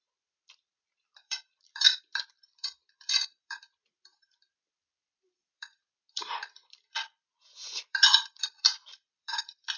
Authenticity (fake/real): fake